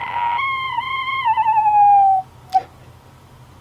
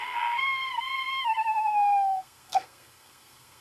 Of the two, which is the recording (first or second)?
first